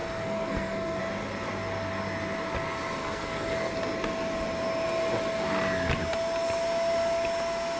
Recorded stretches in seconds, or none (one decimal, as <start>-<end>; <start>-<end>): 1.0-3.0; 3.7-7.8